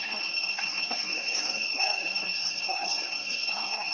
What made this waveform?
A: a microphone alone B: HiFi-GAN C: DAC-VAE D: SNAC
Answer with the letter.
D